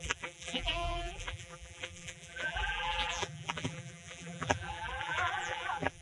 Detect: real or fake fake